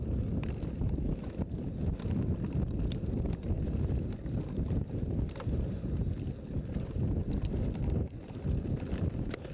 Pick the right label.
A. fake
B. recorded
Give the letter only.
B